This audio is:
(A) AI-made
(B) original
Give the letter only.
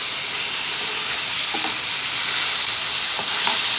B